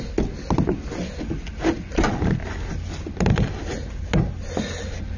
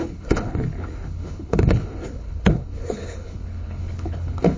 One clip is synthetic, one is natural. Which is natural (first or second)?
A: first